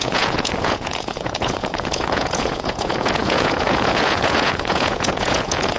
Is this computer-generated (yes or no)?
yes